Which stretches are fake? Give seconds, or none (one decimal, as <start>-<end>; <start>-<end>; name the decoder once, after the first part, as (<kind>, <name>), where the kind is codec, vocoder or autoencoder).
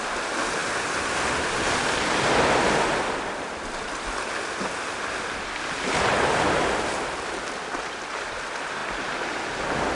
none